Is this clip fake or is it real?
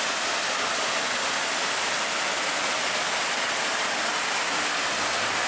real